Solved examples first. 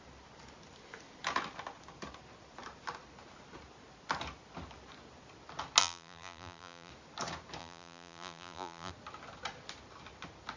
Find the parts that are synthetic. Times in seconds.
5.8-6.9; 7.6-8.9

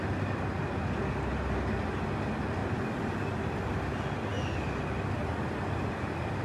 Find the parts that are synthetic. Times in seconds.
none

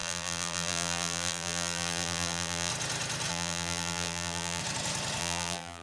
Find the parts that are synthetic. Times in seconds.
0.0-2.7; 3.3-4.6; 5.2-5.8

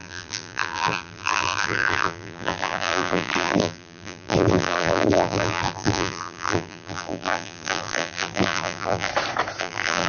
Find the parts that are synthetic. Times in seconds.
0.0-9.1; 9.6-10.1

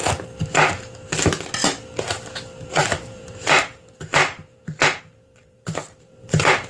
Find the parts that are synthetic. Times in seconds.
2.6-4.2; 5.0-6.7